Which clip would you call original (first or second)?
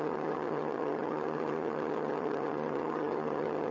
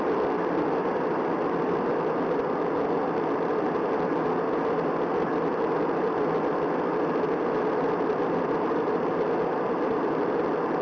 second